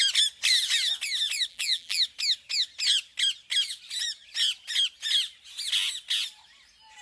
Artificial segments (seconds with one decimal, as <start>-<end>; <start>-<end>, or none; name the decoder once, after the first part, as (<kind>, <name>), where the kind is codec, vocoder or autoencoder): 1.5-2.0 (vocoder, BigVGAN v2)